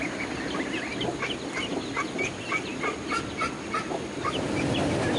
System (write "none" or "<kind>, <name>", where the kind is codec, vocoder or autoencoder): none